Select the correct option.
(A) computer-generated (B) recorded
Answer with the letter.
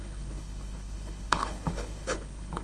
A